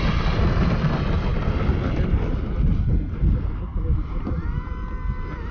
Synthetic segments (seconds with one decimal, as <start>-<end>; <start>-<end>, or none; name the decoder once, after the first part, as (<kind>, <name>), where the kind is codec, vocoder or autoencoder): none